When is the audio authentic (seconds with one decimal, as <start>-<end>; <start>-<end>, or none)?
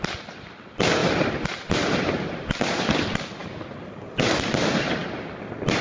0.0-5.8